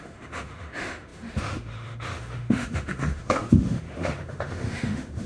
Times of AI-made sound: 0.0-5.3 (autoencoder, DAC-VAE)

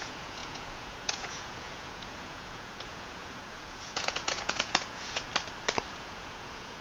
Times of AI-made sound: 0.0-5.3 (vocoder, Vocos); 5.9-6.8

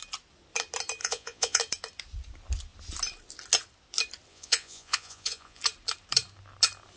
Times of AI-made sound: 1.0-1.6 (vocoder, Vocos); 4.3-5.6

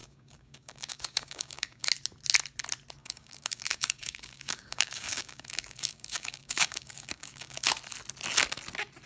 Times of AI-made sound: 0.0-1.9 (codec, DAC); 3.0-7.7

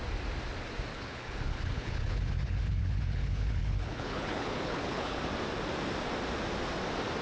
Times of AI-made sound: 0.9-5.2 (codec, HILCodec)

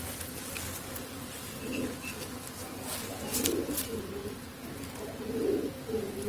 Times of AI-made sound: none